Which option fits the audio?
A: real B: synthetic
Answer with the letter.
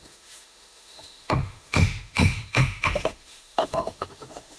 B